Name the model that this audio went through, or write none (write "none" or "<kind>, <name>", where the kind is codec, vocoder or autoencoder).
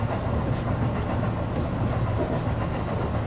none